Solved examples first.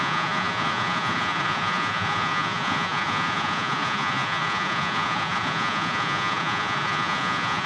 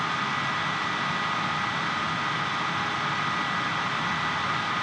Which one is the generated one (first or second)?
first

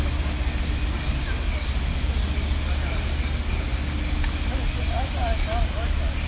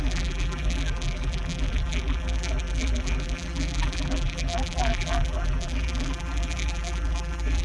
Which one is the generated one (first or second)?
second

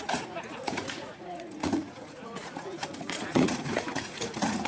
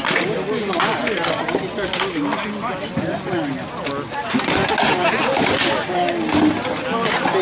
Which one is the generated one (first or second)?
first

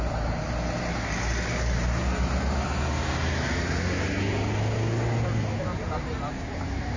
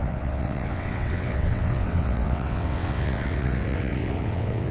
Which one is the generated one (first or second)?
second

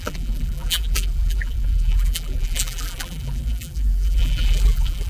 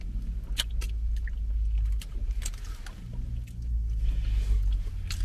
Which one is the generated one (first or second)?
first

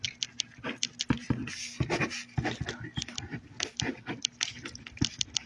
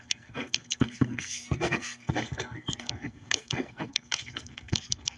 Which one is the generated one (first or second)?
second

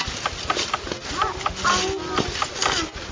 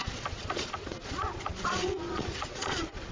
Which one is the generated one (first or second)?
second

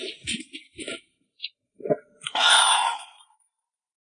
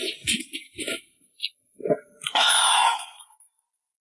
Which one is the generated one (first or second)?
first